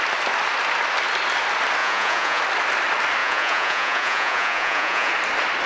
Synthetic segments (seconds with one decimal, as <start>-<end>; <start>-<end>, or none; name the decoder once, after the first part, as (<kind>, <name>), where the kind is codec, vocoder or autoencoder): 1.8-2.4 (vocoder, Vocos); 3.2-5.1